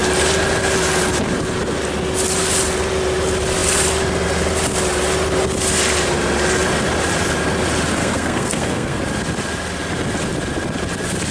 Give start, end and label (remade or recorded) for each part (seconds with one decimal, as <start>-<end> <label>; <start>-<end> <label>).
0.0-8.0 recorded; 8.0-9.0 remade; 9.0-11.3 recorded